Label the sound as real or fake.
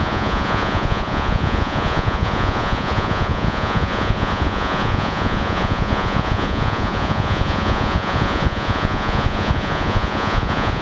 fake